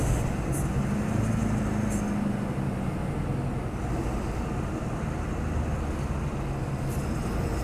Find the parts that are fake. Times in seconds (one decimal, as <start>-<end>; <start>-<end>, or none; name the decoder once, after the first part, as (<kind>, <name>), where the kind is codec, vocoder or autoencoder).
none